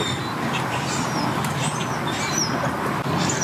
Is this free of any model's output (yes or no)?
yes